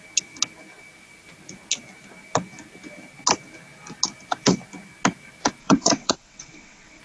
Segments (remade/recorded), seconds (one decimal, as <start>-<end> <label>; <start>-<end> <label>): 0.0-5.6 recorded; 5.6-7.0 remade